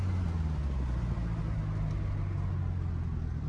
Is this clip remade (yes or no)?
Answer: no